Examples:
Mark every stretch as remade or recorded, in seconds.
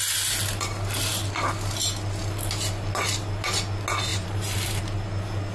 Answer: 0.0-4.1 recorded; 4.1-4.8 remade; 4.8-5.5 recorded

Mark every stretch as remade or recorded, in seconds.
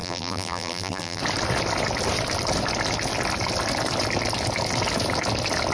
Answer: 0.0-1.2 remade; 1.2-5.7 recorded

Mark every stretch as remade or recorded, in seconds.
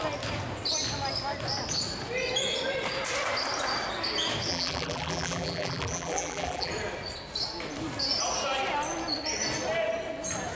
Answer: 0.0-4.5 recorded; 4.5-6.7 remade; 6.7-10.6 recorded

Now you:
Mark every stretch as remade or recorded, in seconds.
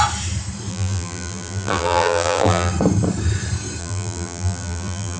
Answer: 0.0-0.7 recorded; 0.7-2.7 remade; 2.7-3.8 recorded; 3.8-5.2 remade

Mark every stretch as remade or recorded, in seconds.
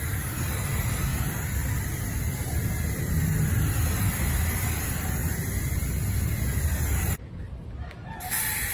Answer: 0.0-8.7 recorded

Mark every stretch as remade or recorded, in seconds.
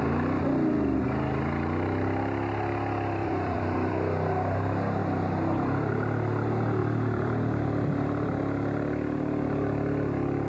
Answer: 0.0-3.2 recorded; 3.2-3.9 remade; 3.9-5.0 recorded; 5.0-5.9 remade; 5.9-6.8 recorded; 6.8-8.4 remade; 8.4-10.5 recorded